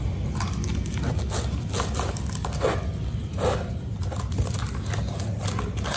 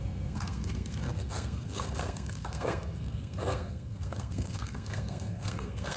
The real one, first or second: first